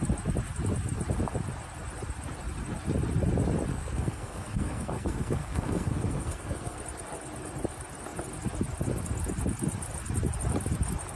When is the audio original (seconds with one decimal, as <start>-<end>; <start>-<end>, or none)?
0.0-3.7; 6.8-11.2